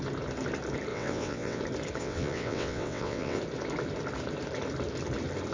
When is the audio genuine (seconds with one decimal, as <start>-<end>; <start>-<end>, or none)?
0.0-0.9; 1.6-2.0; 3.4-5.5